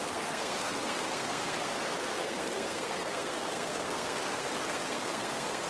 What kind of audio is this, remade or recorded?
remade